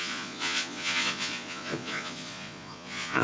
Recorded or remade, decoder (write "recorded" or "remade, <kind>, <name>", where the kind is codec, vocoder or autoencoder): remade, vocoder, Vocos